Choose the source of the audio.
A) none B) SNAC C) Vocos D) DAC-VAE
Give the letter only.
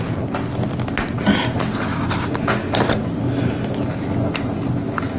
A